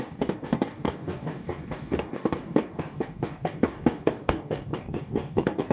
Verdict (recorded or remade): remade